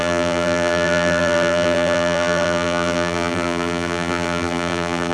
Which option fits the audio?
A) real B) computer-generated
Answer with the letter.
B